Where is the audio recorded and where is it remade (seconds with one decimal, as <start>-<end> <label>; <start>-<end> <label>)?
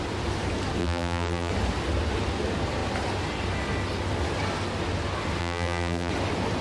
0.0-0.8 recorded; 0.8-1.5 remade; 1.5-5.4 recorded; 5.4-6.1 remade; 6.1-6.6 recorded